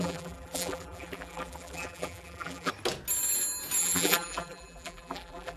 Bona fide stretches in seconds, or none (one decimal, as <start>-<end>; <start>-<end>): 2.7-3.8